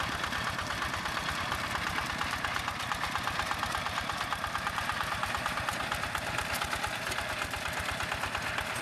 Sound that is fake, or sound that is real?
real